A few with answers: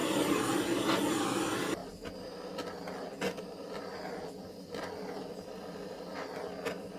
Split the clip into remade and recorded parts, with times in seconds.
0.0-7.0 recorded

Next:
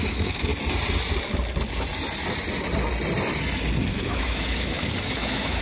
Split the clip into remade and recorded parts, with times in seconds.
0.0-0.5 remade; 0.5-3.9 recorded; 3.9-5.6 remade